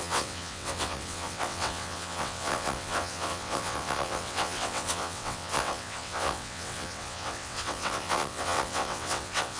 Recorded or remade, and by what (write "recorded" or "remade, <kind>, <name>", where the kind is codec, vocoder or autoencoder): remade, vocoder, WaveNeXt